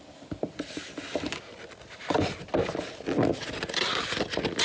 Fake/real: real